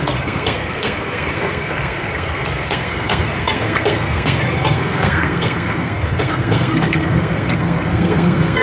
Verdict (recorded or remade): remade